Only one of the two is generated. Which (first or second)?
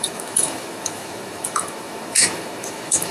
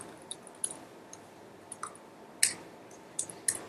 first